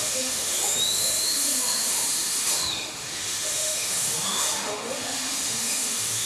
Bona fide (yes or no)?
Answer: no